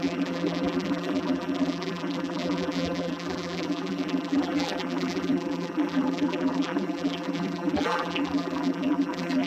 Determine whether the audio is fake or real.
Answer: fake